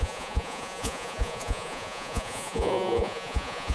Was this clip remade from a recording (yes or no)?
yes